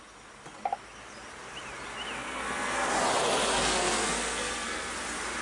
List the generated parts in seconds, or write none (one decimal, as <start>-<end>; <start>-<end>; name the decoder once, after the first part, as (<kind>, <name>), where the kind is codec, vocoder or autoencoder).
2.2-2.9 (codec, SNAC); 3.5-4.9